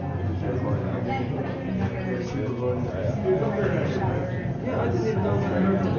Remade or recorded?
recorded